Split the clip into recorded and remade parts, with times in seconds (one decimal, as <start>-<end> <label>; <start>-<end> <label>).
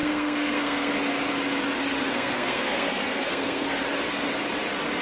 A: 0.0-0.9 remade; 0.9-2.1 recorded; 2.1-3.8 remade; 3.8-5.0 recorded